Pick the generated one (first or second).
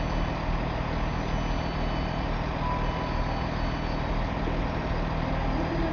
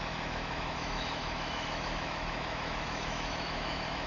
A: second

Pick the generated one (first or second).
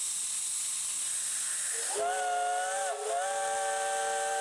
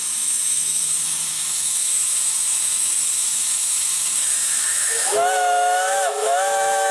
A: second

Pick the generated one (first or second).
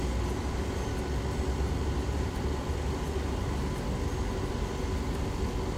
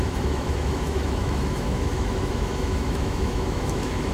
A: second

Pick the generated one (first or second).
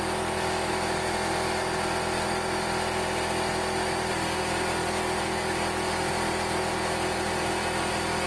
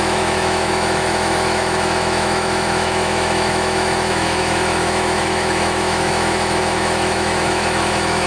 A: second